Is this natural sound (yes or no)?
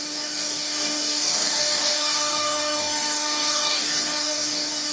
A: no